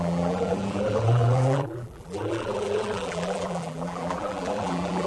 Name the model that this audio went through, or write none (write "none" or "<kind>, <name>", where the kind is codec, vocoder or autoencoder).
vocoder, BigVGAN v2